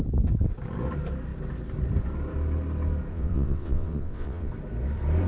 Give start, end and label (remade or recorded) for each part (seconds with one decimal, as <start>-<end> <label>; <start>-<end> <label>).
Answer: 0.0-3.1 recorded; 3.1-4.5 remade; 4.5-5.3 recorded